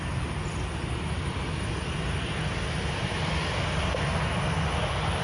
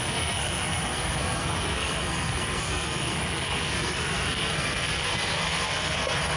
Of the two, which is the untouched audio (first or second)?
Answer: first